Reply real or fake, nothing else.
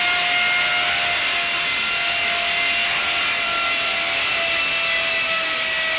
real